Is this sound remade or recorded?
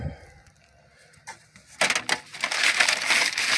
recorded